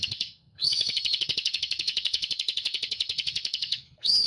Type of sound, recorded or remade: remade